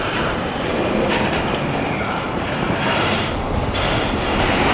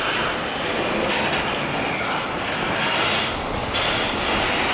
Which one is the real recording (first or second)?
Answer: second